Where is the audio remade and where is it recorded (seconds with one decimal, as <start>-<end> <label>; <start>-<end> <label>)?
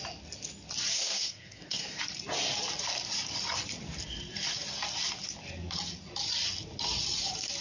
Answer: 0.0-1.0 recorded; 1.0-2.0 remade; 2.0-7.6 recorded